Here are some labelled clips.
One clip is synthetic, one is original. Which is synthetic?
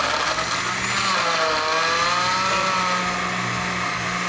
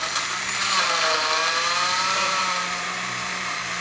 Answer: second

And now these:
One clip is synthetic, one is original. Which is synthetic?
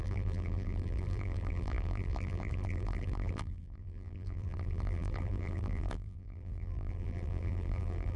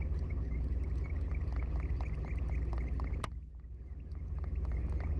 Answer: first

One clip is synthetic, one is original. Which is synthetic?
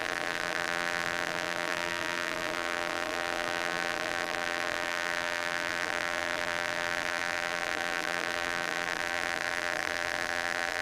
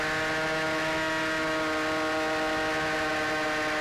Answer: first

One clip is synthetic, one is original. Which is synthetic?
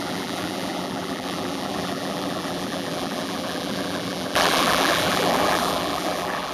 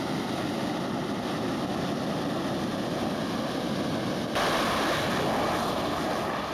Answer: first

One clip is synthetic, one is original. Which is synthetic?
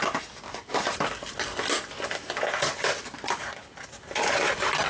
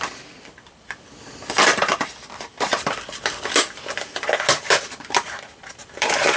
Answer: second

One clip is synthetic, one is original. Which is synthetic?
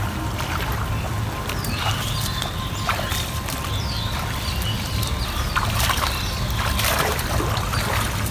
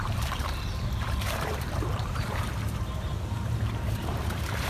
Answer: second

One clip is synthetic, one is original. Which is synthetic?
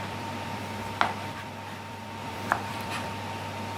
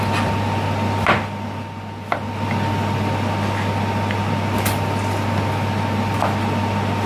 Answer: first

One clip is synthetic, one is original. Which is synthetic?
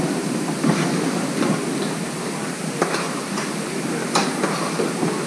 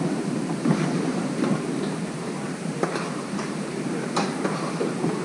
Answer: second